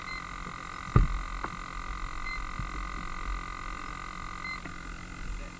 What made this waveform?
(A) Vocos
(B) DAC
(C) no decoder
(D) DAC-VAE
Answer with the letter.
C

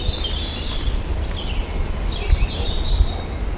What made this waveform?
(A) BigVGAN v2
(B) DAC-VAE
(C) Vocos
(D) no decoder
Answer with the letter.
D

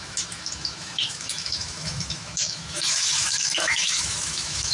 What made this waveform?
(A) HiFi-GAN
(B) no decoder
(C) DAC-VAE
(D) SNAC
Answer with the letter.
C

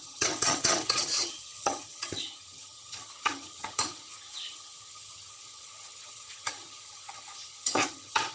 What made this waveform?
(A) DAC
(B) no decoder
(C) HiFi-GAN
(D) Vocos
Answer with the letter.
C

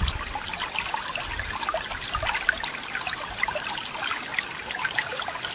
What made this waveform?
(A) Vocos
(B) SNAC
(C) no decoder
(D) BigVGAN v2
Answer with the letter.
C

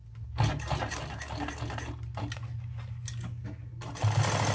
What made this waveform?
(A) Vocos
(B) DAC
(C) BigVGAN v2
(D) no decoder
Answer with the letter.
D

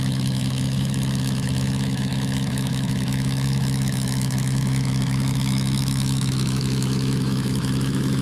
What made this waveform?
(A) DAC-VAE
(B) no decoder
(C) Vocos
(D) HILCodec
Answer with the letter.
A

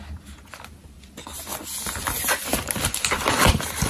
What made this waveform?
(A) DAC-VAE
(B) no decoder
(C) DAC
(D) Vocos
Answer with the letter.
B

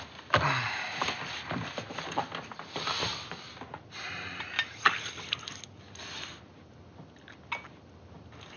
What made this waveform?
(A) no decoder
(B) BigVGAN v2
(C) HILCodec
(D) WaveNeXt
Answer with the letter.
A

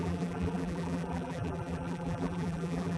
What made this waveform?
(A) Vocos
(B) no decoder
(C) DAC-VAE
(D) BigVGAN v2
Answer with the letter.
D